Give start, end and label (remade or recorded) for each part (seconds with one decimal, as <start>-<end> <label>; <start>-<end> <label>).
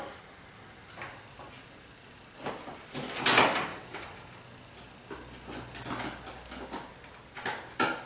0.0-3.7 recorded; 3.7-4.3 remade; 4.3-8.1 recorded